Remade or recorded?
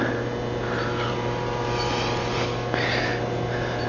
recorded